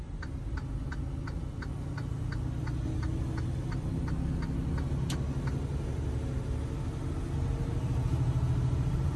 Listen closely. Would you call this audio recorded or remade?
recorded